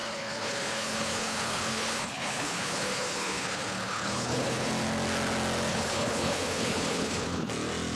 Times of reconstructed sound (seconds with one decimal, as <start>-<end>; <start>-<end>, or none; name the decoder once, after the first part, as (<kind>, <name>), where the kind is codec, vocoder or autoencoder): 0.0-4.7 (codec, HILCodec); 5.7-7.5